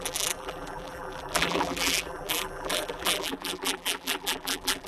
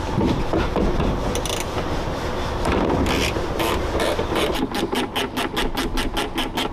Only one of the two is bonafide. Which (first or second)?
second